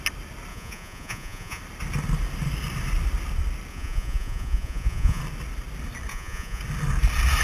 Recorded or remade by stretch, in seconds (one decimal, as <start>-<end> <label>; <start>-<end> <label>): 0.0-0.5 recorded; 0.5-1.6 remade; 1.6-3.7 recorded; 3.7-5.2 remade; 5.2-6.1 recorded; 6.1-6.6 remade; 6.6-7.4 recorded